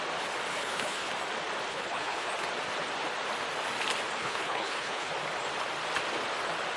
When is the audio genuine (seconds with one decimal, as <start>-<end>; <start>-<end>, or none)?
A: 0.0-0.5; 1.1-1.7; 2.3-4.2; 5.1-6.8